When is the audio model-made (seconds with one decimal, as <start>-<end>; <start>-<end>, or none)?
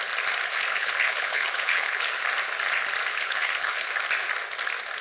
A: 0.5-2.2; 3.1-3.9